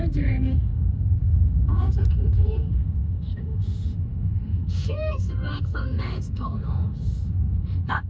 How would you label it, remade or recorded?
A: remade